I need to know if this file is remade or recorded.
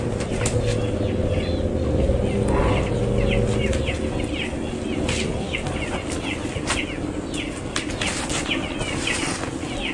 recorded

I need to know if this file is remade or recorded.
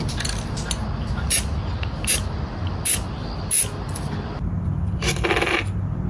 recorded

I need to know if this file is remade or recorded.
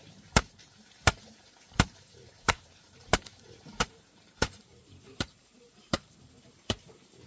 remade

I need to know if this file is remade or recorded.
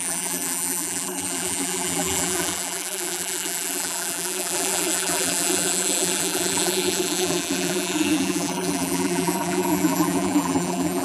remade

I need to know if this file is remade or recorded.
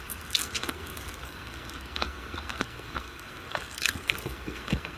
remade